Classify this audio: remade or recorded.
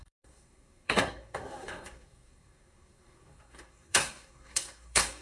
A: remade